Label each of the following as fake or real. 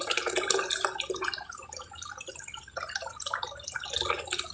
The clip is real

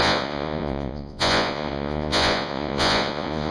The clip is fake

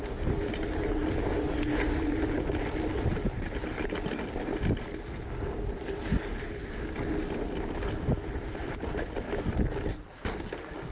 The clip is real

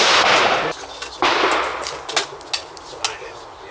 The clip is real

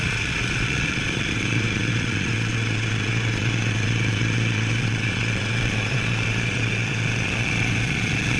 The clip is fake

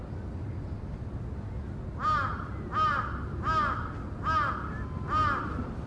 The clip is real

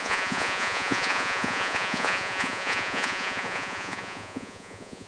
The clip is fake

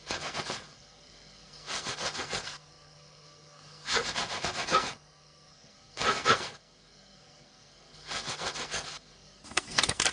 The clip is fake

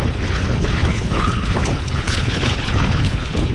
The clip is fake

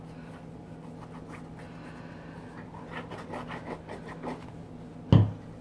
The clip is real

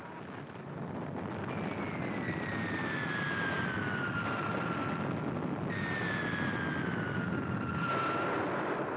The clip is real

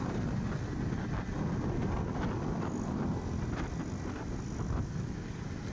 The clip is real